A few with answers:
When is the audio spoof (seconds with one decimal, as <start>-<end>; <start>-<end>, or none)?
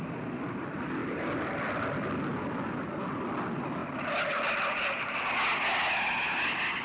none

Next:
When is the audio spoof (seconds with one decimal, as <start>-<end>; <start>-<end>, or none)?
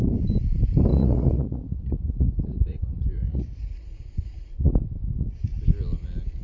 0.9-4.7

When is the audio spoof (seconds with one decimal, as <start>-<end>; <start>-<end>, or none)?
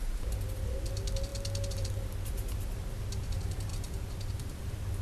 3.7-4.6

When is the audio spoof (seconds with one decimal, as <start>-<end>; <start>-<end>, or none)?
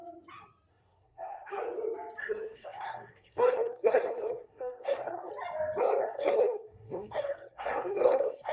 0.7-1.6; 2.2-5.3; 6.0-8.5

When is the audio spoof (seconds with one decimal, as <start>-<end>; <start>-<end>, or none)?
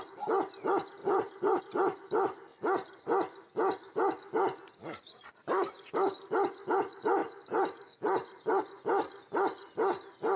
1.0-1.6; 7.2-8.6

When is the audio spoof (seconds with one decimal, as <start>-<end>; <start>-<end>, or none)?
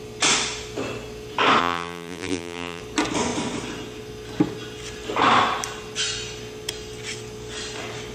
1.6-2.8